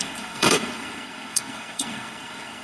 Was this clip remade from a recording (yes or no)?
yes